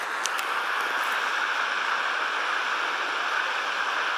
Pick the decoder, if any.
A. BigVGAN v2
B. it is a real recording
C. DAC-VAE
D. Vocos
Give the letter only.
B